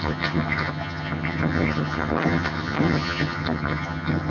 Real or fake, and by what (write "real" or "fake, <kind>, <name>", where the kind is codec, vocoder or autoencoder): fake, vocoder, HiFi-GAN